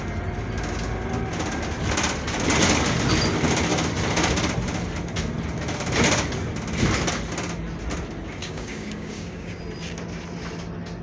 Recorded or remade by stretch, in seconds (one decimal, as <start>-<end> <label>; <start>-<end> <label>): 0.0-8.4 recorded; 8.4-9.6 remade; 9.6-11.0 recorded